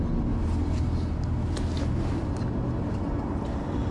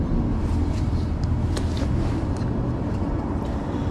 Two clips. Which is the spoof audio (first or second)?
second